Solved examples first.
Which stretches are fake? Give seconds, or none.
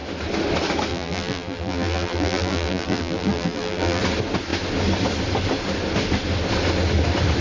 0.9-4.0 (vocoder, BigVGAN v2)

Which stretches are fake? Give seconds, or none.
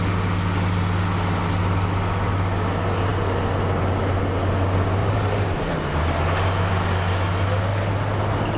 5.0-6.0 (vocoder, BigVGAN v2)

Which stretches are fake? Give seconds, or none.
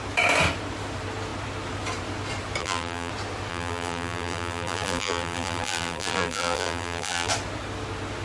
2.6-3.1 (vocoder, BigVGAN v2); 3.5-7.3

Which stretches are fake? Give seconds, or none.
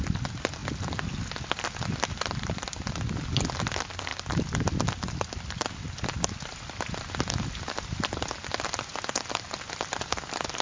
4.1-7.3 (vocoder, BigVGAN v2)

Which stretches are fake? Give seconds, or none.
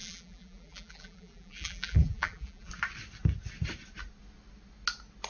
0.0-2.7 (vocoder, BigVGAN v2)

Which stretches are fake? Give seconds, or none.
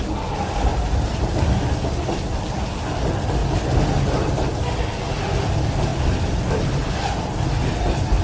0.7-1.7 (vocoder, BigVGAN v2); 3.4-4.1